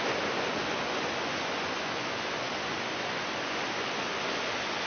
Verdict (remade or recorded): remade